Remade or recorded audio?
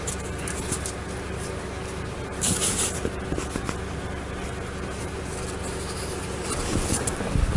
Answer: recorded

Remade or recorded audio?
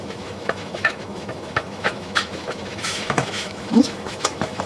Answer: remade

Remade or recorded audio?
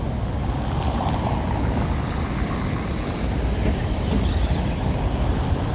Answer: recorded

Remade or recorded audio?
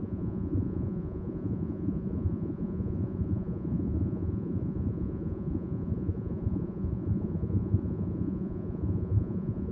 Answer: remade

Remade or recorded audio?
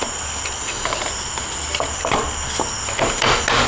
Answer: recorded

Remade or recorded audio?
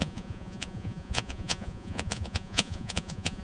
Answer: remade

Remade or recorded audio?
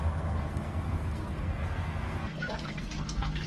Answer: remade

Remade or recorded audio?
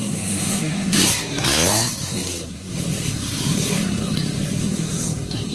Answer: remade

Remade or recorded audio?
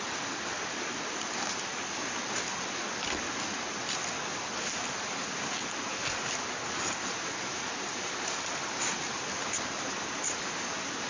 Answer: recorded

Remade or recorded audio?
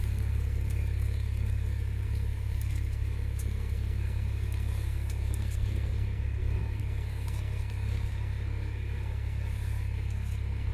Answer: remade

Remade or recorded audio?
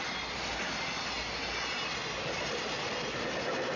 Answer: recorded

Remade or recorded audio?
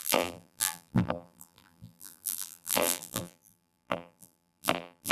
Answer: remade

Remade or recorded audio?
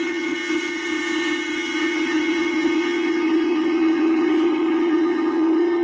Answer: remade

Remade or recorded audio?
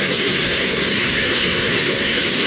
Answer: remade